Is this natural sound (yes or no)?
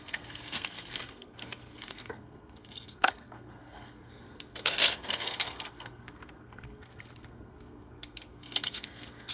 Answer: no